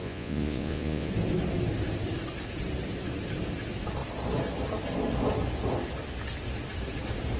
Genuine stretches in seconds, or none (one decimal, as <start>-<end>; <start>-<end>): 1.1-7.4